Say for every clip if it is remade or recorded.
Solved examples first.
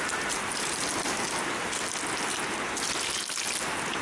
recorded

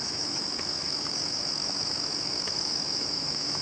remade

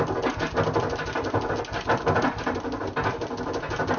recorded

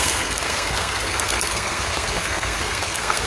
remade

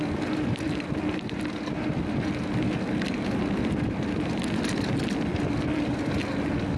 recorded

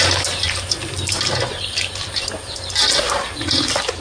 recorded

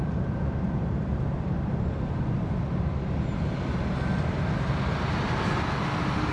recorded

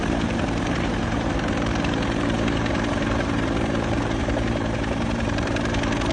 remade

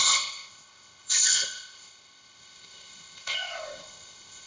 remade